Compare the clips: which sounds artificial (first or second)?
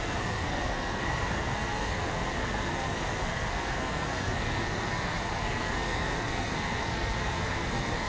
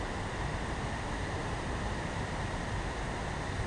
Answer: first